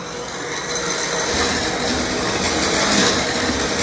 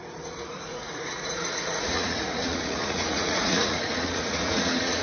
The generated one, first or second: second